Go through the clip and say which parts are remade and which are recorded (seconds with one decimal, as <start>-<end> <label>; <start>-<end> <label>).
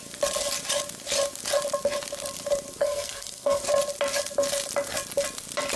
0.0-2.8 recorded; 2.8-3.6 remade; 3.6-5.8 recorded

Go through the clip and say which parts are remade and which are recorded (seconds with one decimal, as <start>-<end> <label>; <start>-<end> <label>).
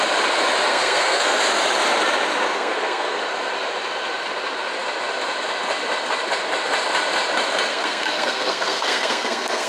0.0-0.7 recorded; 0.7-1.4 remade; 1.4-2.5 recorded; 2.5-3.2 remade; 3.2-7.7 recorded; 7.7-9.7 remade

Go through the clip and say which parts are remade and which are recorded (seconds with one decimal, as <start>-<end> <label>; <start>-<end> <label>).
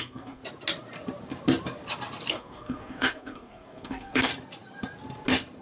0.0-0.4 remade; 0.4-2.3 recorded; 2.3-4.3 remade; 4.3-5.6 recorded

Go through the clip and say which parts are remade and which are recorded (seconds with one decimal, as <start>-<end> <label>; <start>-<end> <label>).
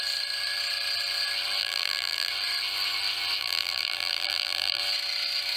0.0-1.6 recorded; 1.6-2.3 remade; 2.3-3.4 recorded; 3.4-4.8 remade; 4.8-5.6 recorded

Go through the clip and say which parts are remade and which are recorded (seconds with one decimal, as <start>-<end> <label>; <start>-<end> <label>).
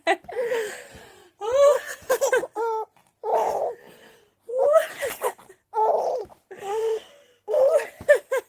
0.0-6.7 recorded; 6.7-7.6 remade; 7.6-8.5 recorded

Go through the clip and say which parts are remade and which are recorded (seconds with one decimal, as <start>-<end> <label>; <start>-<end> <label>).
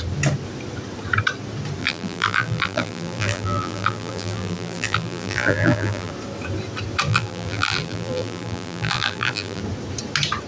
0.0-1.8 recorded; 1.8-6.1 remade; 6.1-7.1 recorded; 7.1-9.6 remade; 9.6-10.5 recorded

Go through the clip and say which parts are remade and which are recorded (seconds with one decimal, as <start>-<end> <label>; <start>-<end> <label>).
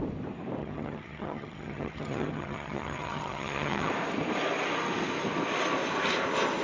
0.0-0.6 recorded; 0.6-3.9 remade; 3.9-6.6 recorded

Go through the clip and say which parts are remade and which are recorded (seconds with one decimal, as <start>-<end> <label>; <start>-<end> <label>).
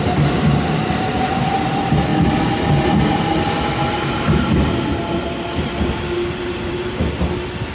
0.0-7.7 recorded